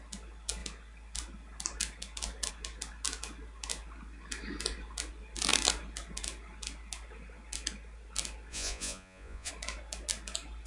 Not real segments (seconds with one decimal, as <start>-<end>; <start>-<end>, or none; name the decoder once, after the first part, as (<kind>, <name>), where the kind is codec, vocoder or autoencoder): 8.5-9.5 (vocoder, Vocos)